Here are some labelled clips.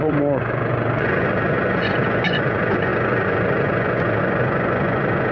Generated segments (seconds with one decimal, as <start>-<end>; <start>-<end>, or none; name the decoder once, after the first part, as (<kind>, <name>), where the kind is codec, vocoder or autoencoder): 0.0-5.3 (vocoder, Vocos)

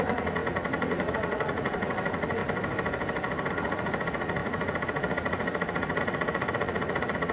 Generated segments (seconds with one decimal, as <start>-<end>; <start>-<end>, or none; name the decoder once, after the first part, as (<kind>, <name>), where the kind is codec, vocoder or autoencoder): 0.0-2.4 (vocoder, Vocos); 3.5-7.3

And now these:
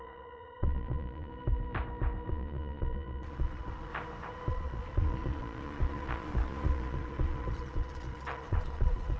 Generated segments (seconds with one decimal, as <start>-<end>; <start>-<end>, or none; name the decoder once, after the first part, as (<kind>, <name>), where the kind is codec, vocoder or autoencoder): 0.0-1.3 (vocoder, Vocos); 2.3-3.9; 4.5-9.2

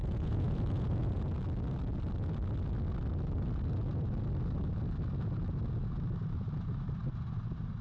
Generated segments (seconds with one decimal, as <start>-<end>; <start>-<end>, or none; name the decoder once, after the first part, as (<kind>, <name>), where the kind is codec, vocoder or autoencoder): 0.0-1.2 (vocoder, Vocos)

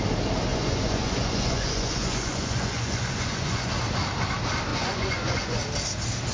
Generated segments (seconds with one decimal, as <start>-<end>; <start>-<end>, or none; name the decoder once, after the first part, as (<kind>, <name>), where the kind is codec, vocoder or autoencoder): 0.5-3.7 (vocoder, Vocos); 4.7-5.6

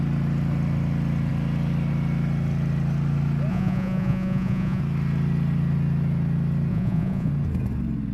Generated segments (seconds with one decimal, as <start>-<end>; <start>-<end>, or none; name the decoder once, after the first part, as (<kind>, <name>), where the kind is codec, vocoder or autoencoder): 3.5-4.8 (vocoder, Vocos); 6.7-7.3

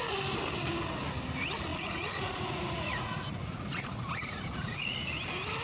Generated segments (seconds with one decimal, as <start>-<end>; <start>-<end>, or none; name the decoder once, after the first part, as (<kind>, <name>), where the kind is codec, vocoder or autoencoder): 1.7-5.1 (vocoder, Vocos)

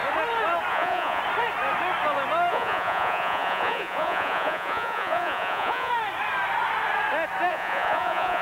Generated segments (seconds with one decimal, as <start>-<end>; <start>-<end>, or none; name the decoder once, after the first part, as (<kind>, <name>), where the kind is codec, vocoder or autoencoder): 0.7-1.2 (vocoder, Vocos); 2.5-5.9; 7.5-8.4